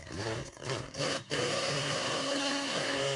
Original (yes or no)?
no